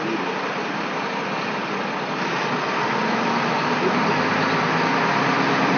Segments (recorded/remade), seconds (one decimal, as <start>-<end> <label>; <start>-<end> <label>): 0.0-5.8 recorded